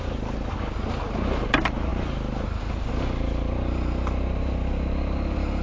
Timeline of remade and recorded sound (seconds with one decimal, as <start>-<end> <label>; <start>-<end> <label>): 0.0-5.6 recorded